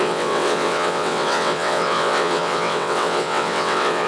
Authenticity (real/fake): fake